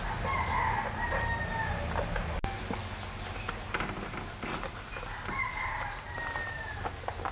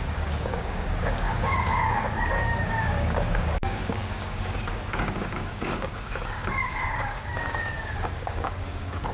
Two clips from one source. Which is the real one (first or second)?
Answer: first